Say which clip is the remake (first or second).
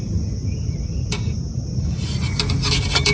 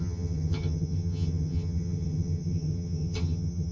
second